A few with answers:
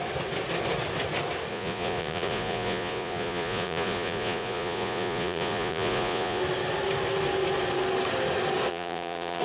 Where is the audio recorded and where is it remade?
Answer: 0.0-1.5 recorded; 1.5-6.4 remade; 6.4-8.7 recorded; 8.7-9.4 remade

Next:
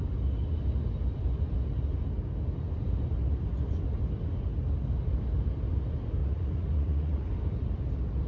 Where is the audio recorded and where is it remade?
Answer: 0.0-6.2 recorded; 6.2-7.3 remade; 7.3-8.3 recorded

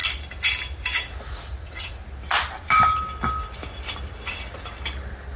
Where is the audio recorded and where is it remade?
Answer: 0.0-1.2 recorded; 1.2-2.0 remade; 2.0-5.4 recorded

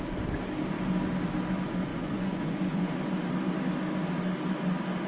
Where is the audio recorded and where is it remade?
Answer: 0.0-1.9 recorded; 1.9-2.9 remade; 2.9-5.1 recorded

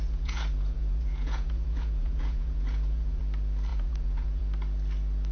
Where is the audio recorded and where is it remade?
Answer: 0.0-3.2 remade; 3.2-3.7 recorded; 3.7-4.4 remade; 4.4-5.3 recorded

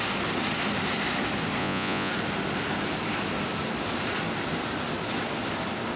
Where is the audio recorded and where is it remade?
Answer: 0.0-1.6 recorded; 1.6-2.1 remade; 2.1-6.0 recorded

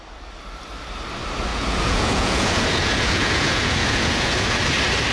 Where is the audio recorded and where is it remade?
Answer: 0.0-1.5 recorded; 1.5-4.6 remade; 4.6-5.1 recorded